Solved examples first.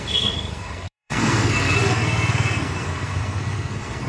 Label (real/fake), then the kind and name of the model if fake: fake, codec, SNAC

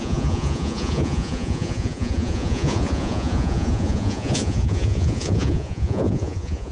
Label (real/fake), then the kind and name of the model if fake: fake, vocoder, Vocos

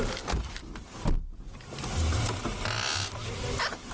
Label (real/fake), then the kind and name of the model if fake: real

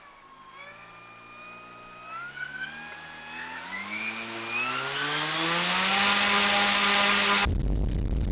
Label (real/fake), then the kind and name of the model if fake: real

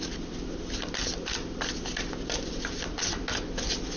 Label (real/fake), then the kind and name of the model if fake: real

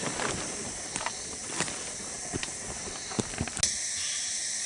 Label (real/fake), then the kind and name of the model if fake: real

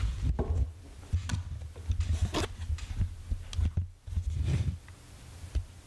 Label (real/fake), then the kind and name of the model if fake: real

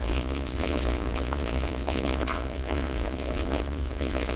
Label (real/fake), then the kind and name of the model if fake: fake, vocoder, Vocos